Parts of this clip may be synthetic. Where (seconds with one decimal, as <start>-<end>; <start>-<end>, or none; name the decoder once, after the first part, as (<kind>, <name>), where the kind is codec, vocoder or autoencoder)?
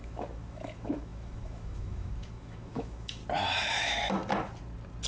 0.0-3.2 (autoencoder, DAC-VAE); 3.8-4.2